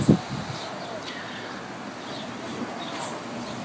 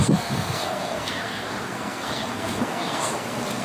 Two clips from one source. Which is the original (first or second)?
first